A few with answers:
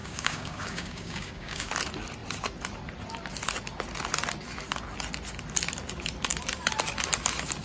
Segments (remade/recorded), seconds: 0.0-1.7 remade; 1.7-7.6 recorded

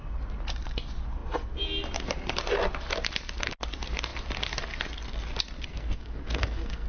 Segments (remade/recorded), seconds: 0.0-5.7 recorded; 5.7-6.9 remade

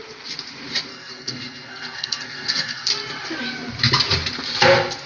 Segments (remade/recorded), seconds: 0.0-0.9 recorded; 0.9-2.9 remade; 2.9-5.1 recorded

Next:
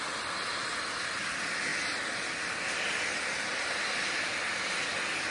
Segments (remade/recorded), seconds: 0.0-5.3 recorded